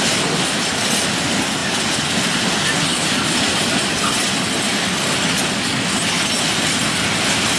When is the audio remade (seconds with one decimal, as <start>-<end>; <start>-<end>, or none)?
none